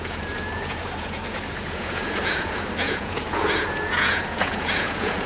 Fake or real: fake